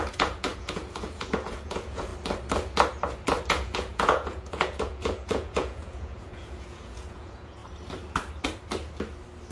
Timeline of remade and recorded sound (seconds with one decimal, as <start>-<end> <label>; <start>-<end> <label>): 0.0-2.1 remade; 2.1-3.5 recorded; 3.5-7.6 remade; 7.6-9.5 recorded